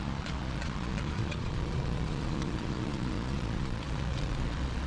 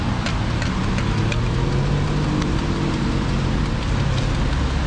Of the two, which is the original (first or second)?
second